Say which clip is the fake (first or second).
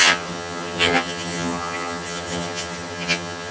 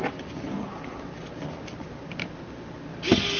first